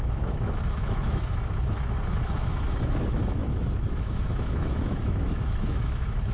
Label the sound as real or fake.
fake